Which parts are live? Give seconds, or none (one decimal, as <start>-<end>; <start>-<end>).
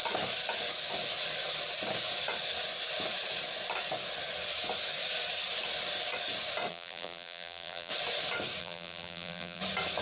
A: 0.0-6.7; 7.9-8.6; 9.6-10.0